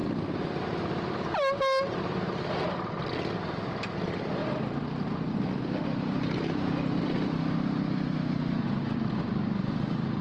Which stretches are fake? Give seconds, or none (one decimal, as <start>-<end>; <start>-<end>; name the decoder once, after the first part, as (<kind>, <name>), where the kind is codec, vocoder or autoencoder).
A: none